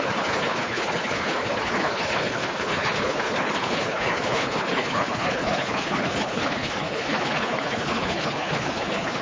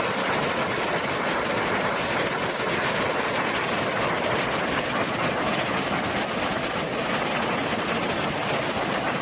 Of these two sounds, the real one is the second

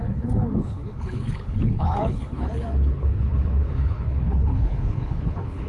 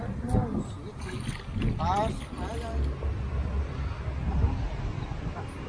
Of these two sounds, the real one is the second